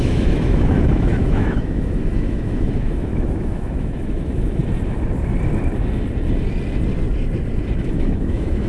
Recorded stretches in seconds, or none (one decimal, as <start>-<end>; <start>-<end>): 4.6-7.8